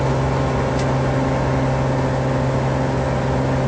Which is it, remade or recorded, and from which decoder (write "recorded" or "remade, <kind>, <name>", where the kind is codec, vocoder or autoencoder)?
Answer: recorded